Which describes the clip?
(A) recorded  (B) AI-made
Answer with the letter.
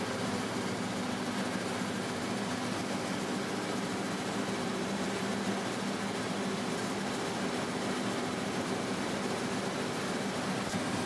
A